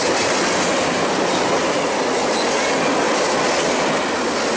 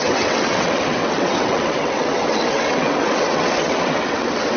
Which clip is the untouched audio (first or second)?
first